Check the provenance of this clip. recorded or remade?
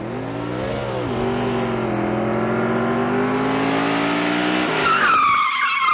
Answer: recorded